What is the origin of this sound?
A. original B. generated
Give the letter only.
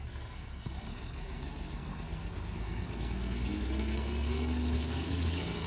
B